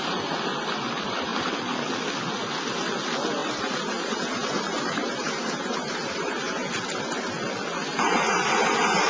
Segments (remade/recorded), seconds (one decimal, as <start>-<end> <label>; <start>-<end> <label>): 0.0-3.4 recorded; 3.4-6.7 remade; 6.7-9.1 recorded